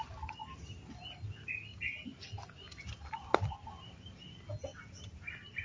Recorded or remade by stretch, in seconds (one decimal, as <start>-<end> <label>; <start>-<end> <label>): 0.0-5.6 recorded